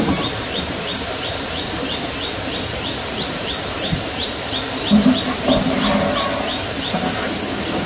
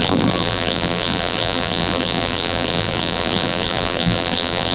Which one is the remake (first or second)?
second